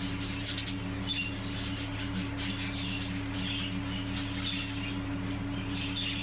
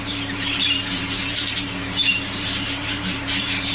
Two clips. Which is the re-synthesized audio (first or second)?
second